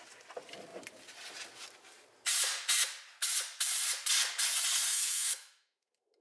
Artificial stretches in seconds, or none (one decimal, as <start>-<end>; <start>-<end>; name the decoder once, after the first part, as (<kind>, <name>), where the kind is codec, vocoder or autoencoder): 4.9-6.2 (autoencoder, DAC-VAE)